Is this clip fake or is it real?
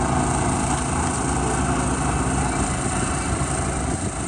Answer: real